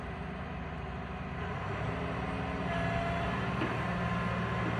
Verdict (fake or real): real